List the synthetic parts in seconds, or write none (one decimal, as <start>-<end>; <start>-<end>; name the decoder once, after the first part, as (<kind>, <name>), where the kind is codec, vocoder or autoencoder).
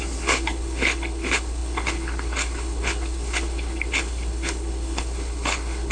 0.0-5.9 (codec, HILCodec)